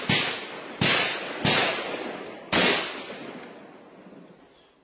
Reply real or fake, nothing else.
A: real